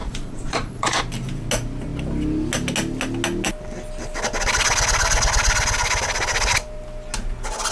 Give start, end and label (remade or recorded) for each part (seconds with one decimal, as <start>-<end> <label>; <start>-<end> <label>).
0.0-1.0 remade; 1.0-7.7 recorded